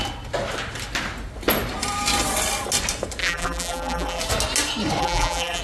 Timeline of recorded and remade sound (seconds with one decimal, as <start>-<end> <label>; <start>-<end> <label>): 0.0-3.2 recorded; 3.2-4.2 remade; 4.2-5.0 recorded; 5.0-5.6 remade

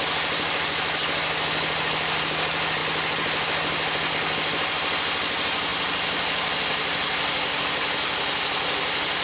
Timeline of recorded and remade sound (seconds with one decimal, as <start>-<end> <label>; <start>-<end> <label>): 0.0-9.2 recorded

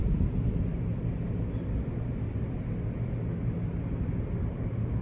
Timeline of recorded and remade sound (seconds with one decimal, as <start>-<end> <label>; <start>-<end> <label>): 0.0-5.0 recorded

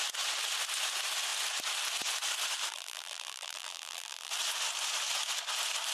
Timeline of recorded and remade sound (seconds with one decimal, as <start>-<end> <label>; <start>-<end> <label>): 0.0-2.7 recorded; 2.7-4.3 remade; 4.3-5.9 recorded

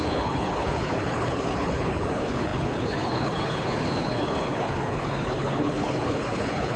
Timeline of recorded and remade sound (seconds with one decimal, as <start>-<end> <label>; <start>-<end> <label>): 0.0-6.8 remade

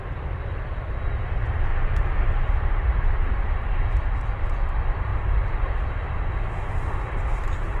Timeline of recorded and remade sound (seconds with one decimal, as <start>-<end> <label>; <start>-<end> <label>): 0.0-1.7 recorded; 1.7-4.0 remade; 4.0-5.1 recorded; 5.1-5.7 remade; 5.7-7.8 recorded